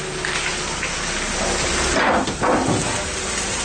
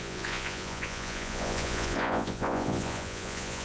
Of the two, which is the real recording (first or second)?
first